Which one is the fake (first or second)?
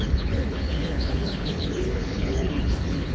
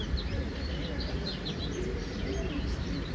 first